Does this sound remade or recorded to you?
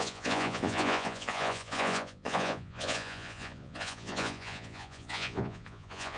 remade